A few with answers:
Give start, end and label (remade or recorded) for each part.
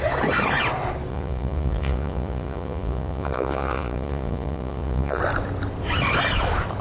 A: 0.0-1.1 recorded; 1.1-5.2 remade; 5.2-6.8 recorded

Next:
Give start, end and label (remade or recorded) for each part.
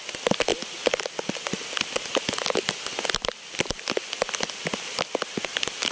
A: 0.0-5.9 recorded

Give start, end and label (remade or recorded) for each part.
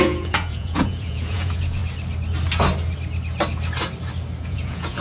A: 0.0-1.8 remade; 1.8-4.4 recorded; 4.4-5.0 remade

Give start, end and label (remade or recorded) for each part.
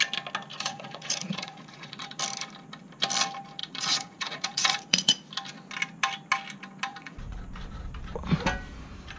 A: 0.0-0.5 recorded; 0.5-2.2 remade; 2.2-3.6 recorded; 3.6-5.1 remade; 5.1-6.9 recorded; 6.9-7.4 remade; 7.4-9.2 recorded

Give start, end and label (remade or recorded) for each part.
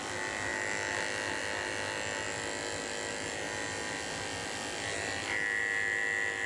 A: 0.0-6.5 recorded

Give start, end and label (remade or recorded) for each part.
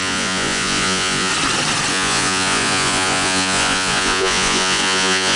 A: 0.0-1.3 remade; 1.3-1.9 recorded; 1.9-5.4 remade